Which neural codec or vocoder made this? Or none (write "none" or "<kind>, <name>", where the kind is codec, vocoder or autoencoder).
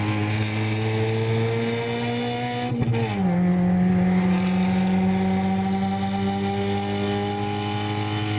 none